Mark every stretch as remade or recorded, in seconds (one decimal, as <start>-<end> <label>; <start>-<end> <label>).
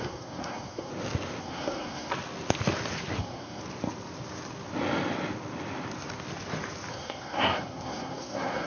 0.0-0.9 remade; 0.9-1.4 recorded; 1.4-2.1 remade; 2.1-3.2 recorded; 3.2-3.6 remade; 3.6-6.9 recorded; 6.9-8.7 remade